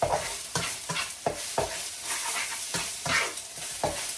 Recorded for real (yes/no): yes